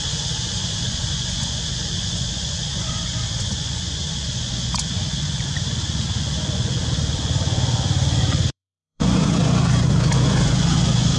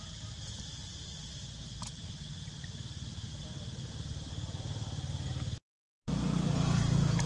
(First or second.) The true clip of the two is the second